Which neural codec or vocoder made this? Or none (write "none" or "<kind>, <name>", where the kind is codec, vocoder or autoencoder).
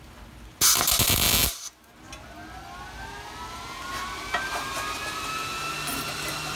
none